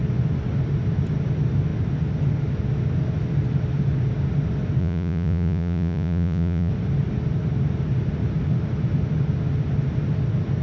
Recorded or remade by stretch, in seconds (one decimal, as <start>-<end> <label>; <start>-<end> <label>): 0.0-4.8 recorded; 4.8-6.7 remade; 6.7-10.6 recorded